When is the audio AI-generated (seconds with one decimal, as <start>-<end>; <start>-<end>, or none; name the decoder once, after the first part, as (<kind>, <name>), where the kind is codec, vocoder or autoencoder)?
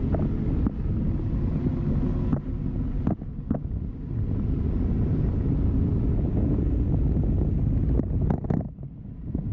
none